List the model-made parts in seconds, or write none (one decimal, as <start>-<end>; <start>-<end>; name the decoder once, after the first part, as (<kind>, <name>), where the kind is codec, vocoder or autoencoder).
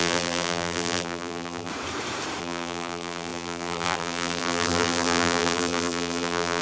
0.0-1.7 (vocoder, BigVGAN v2); 2.4-6.6